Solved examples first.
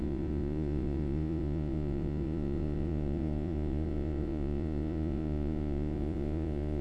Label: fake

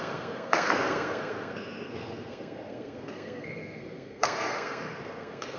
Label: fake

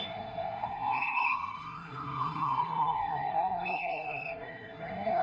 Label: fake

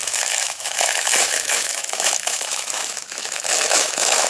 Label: fake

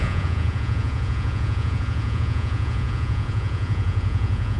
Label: fake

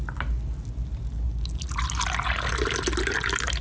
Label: real